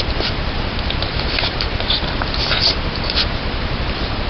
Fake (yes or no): no